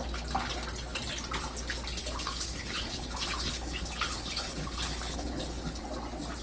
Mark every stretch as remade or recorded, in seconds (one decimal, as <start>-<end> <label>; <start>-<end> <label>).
0.0-2.0 recorded; 2.0-5.8 remade; 5.8-6.4 recorded